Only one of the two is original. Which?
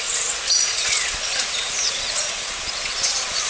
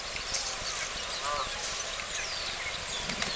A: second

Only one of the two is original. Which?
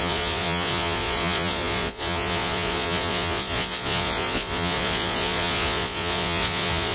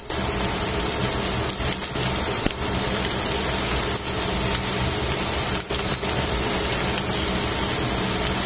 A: second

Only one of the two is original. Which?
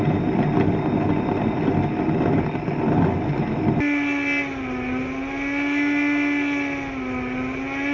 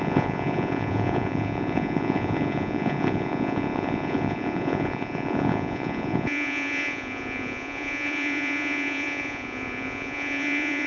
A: first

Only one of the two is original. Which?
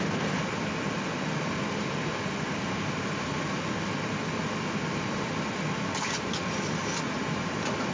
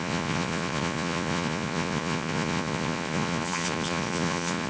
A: first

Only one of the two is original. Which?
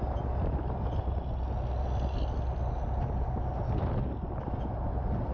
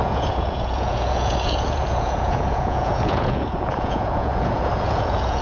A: first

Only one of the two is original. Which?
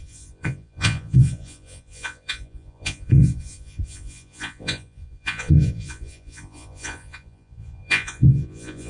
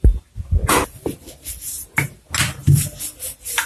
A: second